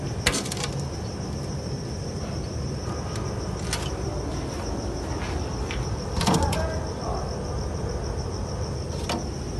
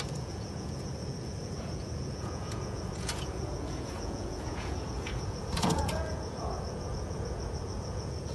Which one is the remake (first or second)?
second